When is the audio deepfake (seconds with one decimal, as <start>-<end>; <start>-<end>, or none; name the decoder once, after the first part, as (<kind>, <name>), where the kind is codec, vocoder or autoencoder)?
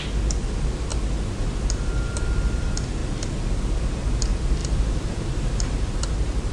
4.6-5.9 (vocoder, BigVGAN v2)